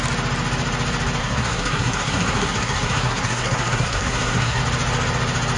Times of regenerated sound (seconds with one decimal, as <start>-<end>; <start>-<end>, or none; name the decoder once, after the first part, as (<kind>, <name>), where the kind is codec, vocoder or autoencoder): 1.2-4.6 (codec, SNAC)